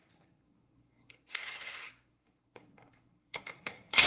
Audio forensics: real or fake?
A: fake